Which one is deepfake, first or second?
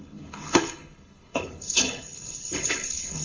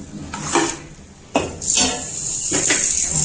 first